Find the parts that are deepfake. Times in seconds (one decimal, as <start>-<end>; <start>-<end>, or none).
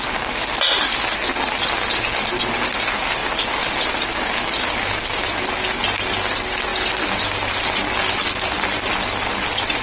none